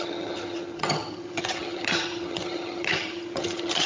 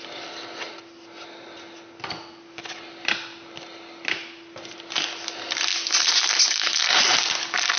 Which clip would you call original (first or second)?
second